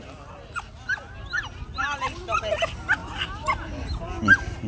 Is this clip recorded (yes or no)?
yes